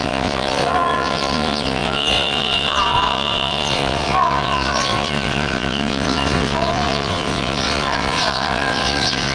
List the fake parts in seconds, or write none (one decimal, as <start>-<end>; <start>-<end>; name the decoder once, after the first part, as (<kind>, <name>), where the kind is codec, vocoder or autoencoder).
0.0-9.3 (vocoder, WaveNeXt)